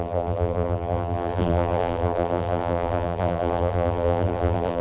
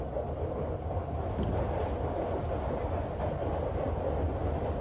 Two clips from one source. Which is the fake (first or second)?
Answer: first